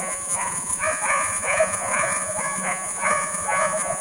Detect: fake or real fake